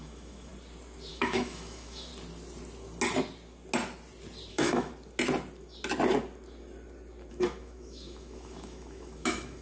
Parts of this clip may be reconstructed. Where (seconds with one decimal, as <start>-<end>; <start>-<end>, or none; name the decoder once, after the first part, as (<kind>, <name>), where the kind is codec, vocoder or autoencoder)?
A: 0.0-0.5 (autoencoder, DAC-VAE); 1.1-2.1; 4.5-4.9; 7.3-9.6